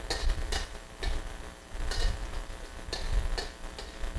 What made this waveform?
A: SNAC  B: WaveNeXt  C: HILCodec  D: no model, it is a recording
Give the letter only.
D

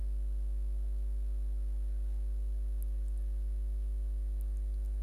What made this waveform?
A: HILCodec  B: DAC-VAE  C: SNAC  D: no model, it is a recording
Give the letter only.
D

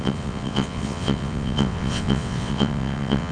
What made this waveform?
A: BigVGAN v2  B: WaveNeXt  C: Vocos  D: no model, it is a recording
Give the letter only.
B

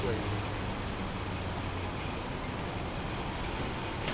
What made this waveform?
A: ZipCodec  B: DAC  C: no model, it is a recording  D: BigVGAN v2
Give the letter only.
C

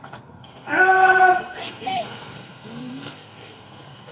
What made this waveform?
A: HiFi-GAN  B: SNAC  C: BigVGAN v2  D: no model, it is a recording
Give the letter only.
B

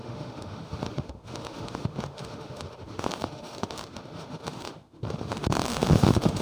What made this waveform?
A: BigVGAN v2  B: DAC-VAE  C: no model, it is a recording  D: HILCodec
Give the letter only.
B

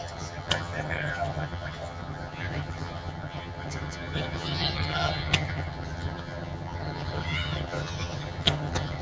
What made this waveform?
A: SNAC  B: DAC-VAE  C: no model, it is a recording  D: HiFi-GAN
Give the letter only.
D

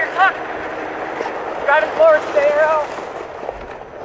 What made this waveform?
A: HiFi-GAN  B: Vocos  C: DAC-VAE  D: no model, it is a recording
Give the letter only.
D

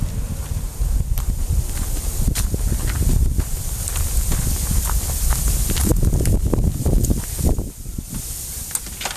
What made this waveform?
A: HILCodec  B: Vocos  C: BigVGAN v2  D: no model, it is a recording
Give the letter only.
D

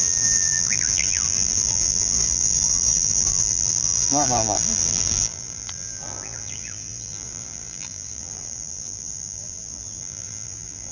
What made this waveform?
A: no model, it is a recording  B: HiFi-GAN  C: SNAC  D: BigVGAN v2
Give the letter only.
D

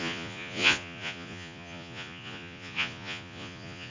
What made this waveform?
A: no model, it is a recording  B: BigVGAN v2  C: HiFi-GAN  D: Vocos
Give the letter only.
D